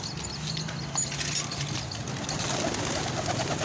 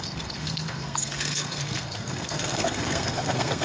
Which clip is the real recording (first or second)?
first